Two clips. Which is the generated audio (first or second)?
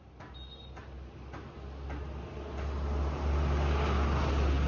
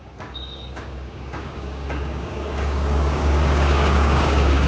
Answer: second